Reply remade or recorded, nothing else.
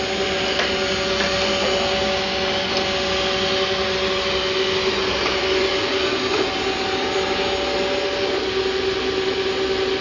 recorded